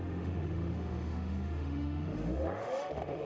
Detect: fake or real fake